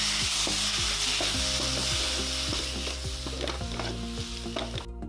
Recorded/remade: recorded